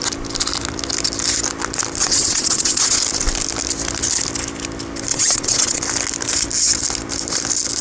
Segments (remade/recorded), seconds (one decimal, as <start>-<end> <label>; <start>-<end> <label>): 0.0-2.0 recorded; 2.0-3.0 remade; 3.0-5.1 recorded; 5.1-5.8 remade; 5.8-7.8 recorded